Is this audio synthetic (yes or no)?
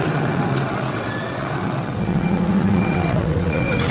yes